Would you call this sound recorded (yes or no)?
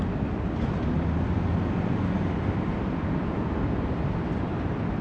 yes